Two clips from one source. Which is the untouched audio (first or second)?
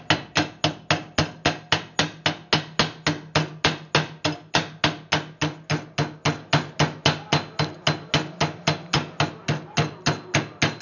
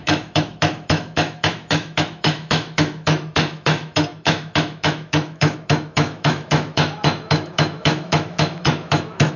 first